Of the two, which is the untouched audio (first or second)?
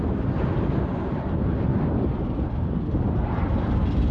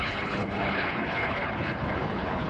first